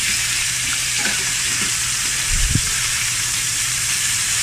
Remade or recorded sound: remade